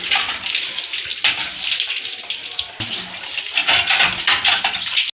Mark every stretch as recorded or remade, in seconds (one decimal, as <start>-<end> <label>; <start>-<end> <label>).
0.0-5.1 recorded